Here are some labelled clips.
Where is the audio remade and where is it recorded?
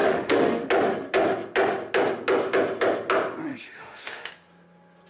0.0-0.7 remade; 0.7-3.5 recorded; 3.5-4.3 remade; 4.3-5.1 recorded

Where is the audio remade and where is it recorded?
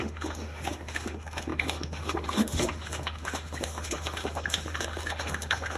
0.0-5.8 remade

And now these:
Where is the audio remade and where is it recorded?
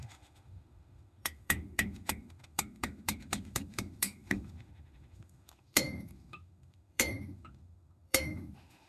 0.0-8.9 remade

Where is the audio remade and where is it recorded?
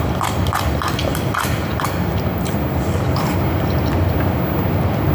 0.0-5.1 recorded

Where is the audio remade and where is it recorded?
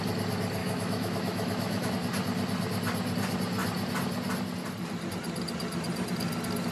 0.0-0.6 recorded; 0.6-1.9 remade; 1.9-6.7 recorded